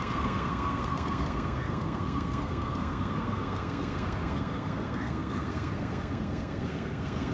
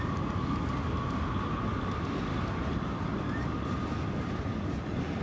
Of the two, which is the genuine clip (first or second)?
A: second